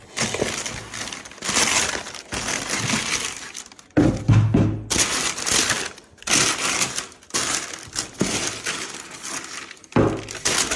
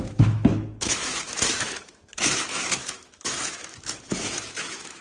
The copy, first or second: second